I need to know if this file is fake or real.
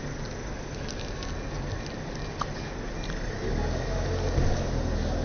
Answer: real